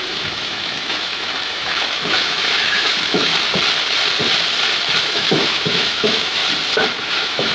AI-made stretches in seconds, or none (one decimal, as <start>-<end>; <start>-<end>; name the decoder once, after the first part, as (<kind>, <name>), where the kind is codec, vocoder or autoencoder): 0.0-3.3 (autoencoder, DAC-VAE); 5.0-6.4; 7.0-7.5